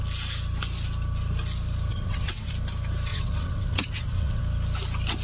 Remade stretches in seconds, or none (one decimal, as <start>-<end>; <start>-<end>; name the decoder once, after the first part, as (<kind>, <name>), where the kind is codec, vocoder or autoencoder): 1.9-2.5 (vocoder, WaveNeXt); 3.1-4.4